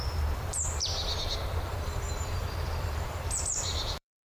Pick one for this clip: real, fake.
fake